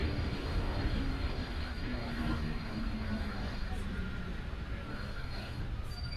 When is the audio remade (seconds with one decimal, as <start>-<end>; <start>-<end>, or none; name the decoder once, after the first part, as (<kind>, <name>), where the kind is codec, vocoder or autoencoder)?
0.0-3.7 (codec, DAC); 4.9-5.6